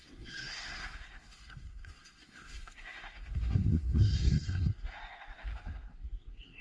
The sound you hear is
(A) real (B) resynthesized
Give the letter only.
B